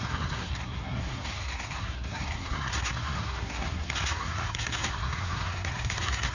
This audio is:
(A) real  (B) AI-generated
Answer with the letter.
B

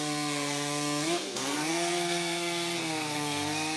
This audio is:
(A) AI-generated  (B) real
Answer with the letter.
A